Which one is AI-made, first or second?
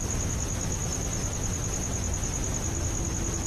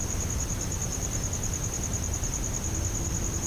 second